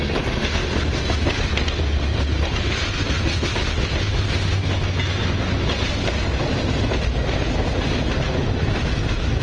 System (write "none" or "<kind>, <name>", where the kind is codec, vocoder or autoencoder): none